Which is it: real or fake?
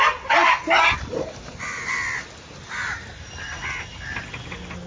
real